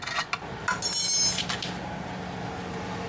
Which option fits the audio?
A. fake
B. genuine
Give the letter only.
B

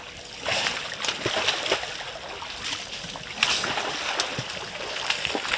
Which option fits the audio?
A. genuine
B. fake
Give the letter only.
A